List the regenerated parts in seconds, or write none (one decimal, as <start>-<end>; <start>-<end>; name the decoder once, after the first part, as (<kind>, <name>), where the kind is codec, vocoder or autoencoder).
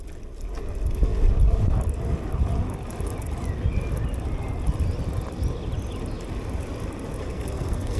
7.2-8.0 (codec, SNAC)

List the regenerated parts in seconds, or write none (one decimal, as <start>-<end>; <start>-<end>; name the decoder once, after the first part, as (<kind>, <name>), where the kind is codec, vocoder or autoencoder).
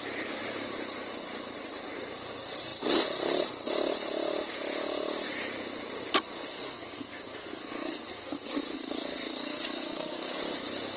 6.5-10.4 (codec, SNAC)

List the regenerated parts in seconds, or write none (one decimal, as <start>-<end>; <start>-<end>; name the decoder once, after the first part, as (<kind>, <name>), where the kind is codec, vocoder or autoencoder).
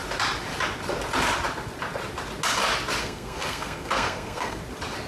3.0-4.6 (codec, SNAC)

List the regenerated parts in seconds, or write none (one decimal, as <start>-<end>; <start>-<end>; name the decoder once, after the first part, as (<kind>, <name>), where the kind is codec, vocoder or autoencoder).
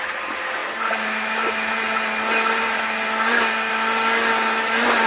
none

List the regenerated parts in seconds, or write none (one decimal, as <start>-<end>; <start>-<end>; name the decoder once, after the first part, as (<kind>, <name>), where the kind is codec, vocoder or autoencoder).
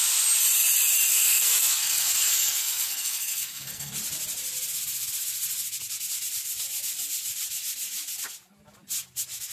1.1-3.9 (codec, SNAC)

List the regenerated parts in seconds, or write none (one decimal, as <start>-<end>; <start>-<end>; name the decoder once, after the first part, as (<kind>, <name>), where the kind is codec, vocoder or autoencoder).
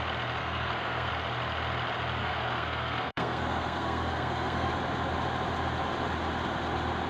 0.4-1.1 (codec, SNAC); 2.2-4.7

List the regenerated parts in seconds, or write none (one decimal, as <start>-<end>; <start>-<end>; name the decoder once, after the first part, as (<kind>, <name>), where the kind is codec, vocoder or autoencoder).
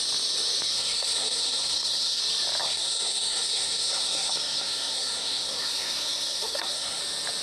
0.7-2.2 (codec, SNAC); 2.6-7.0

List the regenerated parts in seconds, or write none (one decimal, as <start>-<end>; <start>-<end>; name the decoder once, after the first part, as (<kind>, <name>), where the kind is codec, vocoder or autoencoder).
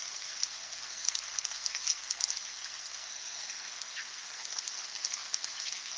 0.0-6.0 (codec, SNAC)